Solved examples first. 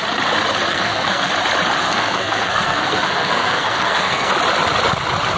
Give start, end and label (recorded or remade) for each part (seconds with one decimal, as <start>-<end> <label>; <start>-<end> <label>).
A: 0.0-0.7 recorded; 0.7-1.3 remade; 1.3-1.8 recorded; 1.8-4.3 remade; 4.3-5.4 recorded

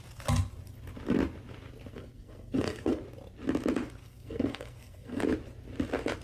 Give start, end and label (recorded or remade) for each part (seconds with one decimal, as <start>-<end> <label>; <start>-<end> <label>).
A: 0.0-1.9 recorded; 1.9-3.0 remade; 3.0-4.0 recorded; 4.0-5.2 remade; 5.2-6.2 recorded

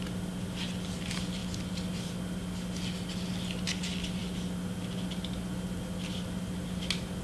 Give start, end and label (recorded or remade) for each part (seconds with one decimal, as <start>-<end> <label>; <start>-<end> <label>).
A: 0.0-7.2 recorded

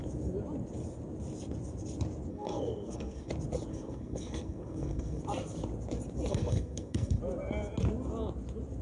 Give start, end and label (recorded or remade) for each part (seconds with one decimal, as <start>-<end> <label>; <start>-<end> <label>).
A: 0.0-2.3 recorded; 2.3-3.3 remade; 3.3-3.7 recorded; 3.7-5.2 remade; 5.2-6.3 recorded; 6.3-7.2 remade; 7.2-8.8 recorded

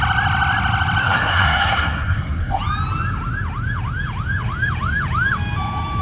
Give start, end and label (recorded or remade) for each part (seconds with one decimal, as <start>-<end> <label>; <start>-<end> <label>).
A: 0.0-1.0 recorded; 1.0-2.6 remade; 2.6-6.0 recorded

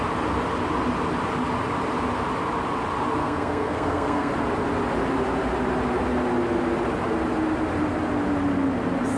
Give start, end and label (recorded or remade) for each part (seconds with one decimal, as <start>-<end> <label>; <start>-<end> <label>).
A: 0.0-3.2 recorded; 3.2-4.3 remade; 4.3-9.2 recorded